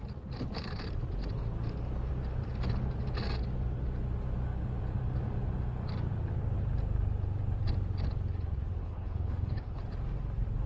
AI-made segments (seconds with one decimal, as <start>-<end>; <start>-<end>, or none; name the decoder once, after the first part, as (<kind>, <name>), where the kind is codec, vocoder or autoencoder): 8.8-9.8 (codec, HILCodec)